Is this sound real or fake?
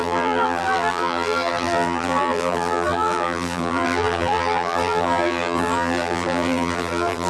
fake